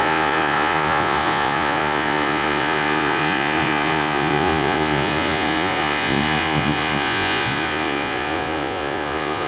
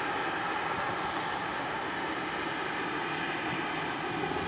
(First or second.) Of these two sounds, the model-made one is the first